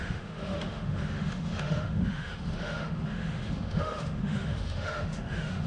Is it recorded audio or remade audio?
remade